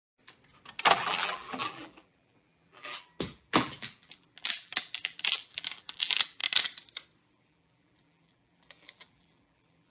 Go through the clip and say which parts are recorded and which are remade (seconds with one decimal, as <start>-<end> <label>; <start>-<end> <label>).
0.0-0.9 recorded; 0.9-6.4 remade; 6.4-7.3 recorded; 7.3-9.9 remade